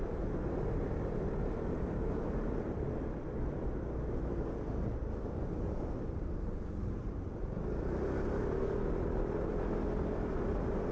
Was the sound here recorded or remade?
recorded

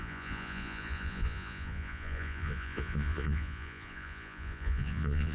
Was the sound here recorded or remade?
remade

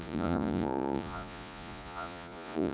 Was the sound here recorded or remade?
remade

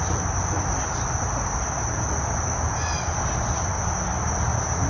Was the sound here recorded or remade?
recorded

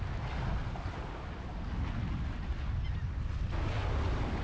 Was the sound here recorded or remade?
recorded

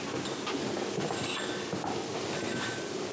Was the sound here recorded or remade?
recorded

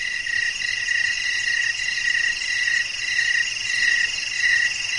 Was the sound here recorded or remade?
recorded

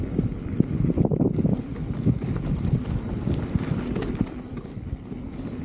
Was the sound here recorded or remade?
recorded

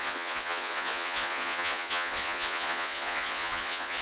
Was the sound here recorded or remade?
remade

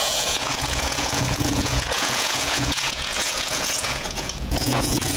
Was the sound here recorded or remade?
remade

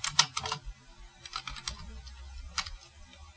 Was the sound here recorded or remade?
recorded